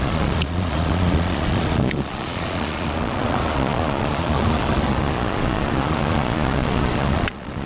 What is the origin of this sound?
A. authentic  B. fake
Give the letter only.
B